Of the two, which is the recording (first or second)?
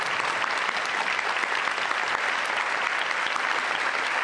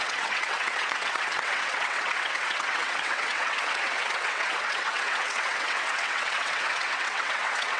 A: first